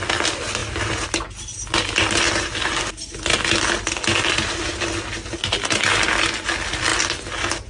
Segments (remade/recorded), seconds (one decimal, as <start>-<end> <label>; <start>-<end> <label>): 0.0-7.7 recorded